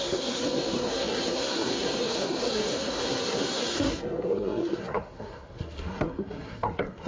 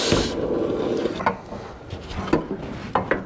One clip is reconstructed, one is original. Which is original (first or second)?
second